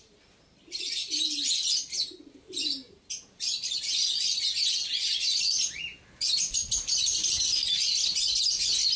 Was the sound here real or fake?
real